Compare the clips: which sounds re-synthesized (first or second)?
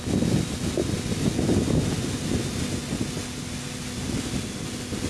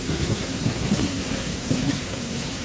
second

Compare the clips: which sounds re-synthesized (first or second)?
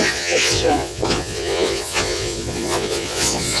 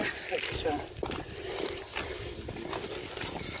first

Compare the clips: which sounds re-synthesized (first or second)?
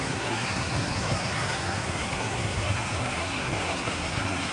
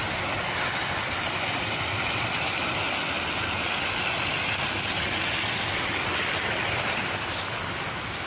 first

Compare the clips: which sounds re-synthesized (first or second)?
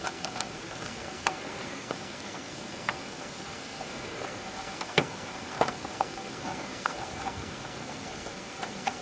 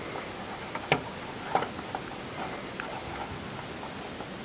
first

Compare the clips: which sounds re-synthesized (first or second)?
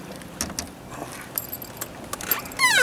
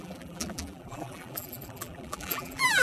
second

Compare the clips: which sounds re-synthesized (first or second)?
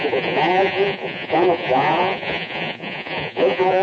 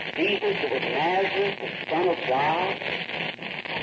first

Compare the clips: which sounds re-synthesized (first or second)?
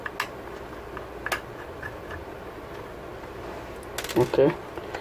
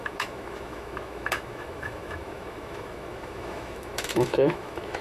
second